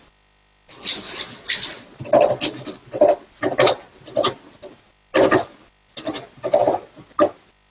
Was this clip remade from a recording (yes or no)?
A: no